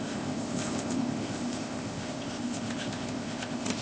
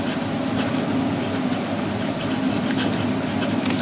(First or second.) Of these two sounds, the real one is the second